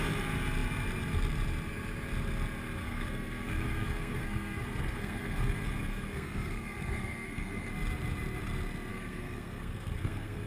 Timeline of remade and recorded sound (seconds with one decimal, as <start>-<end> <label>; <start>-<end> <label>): 0.0-2.8 recorded; 2.8-7.7 remade; 7.7-8.9 recorded; 8.9-10.5 remade